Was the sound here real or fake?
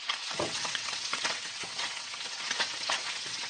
fake